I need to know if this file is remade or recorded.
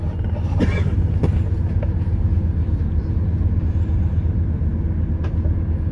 recorded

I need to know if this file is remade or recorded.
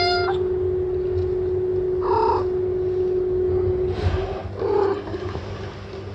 recorded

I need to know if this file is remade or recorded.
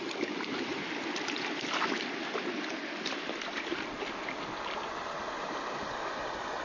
recorded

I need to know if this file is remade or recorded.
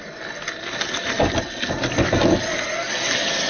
recorded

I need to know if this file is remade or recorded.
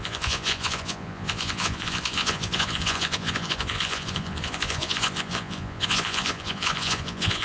remade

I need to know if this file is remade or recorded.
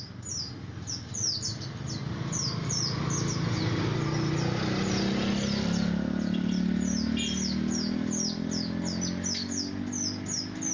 recorded